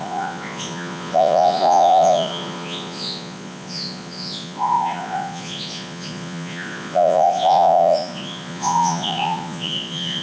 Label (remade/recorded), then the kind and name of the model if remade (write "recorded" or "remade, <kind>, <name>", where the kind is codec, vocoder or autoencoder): remade, vocoder, Vocos